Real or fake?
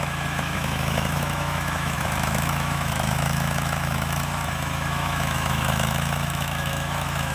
fake